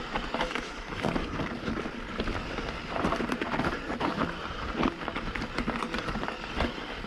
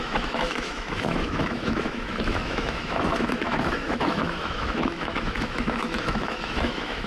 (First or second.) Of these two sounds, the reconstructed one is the second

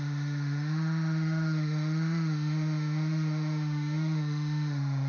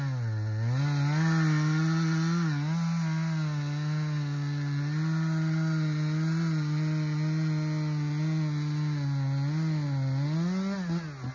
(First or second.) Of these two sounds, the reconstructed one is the first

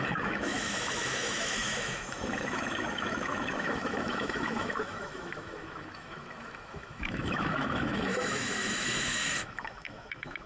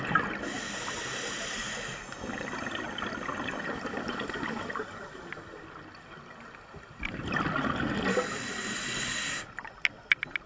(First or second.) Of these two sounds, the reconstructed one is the first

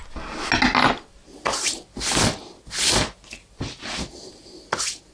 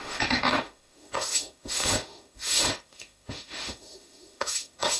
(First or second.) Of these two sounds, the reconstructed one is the second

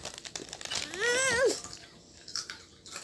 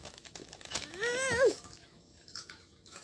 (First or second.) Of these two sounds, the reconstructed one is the second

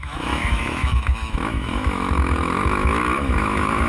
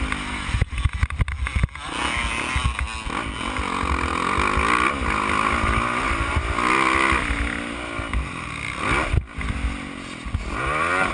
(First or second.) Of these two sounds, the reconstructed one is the first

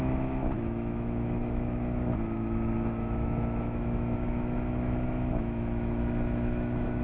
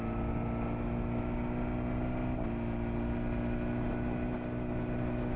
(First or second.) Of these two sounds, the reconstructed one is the first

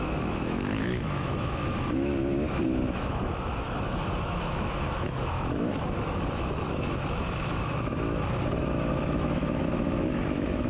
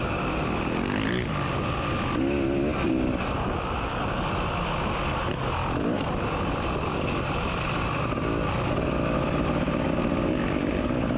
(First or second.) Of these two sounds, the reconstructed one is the first